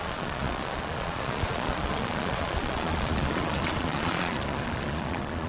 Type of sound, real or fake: fake